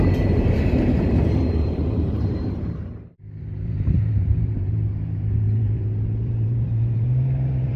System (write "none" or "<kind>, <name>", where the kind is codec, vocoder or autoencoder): vocoder, BigVGAN v2